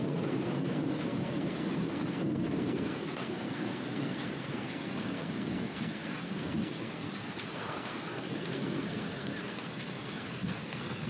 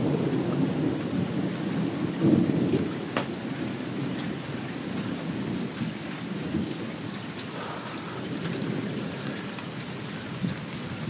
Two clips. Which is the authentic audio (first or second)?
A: second